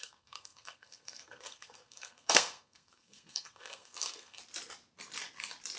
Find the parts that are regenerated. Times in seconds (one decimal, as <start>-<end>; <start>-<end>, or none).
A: 0.0-4.4